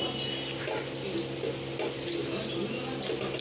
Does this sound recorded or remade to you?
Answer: recorded